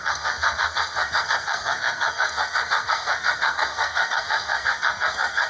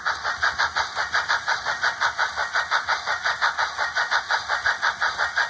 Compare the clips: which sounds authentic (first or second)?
second